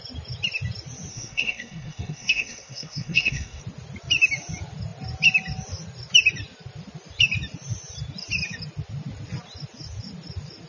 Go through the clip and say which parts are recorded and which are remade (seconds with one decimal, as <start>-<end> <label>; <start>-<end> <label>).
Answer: 0.0-1.1 recorded; 1.1-3.6 remade; 3.6-10.7 recorded